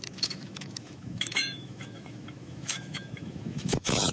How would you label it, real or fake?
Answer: fake